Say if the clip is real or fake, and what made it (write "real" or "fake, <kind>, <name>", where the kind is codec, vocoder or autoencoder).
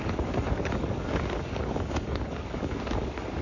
fake, codec, DAC